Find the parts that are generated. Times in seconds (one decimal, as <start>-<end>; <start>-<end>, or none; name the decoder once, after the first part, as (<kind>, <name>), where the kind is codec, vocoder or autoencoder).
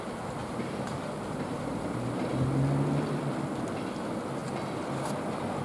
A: 0.4-2.2 (vocoder, BigVGAN v2)